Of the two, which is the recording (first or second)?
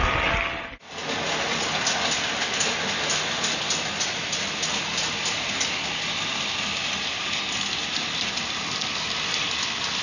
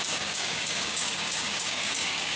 first